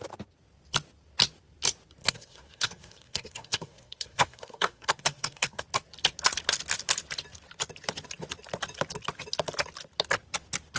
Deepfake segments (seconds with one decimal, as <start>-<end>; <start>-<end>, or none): 2.0-5.6